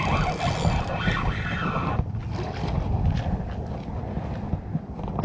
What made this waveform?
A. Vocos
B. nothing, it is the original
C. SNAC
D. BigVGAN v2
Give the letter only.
B